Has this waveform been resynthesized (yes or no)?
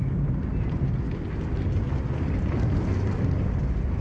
no